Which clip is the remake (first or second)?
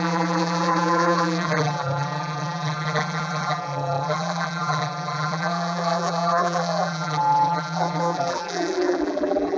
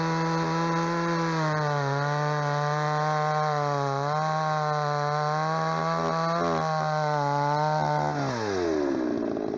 first